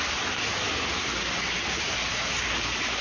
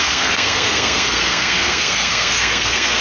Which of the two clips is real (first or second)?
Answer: first